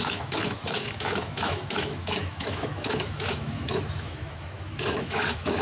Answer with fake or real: fake